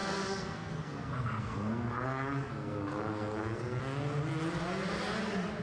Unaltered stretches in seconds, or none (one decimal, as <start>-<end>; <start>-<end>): 3.8-5.6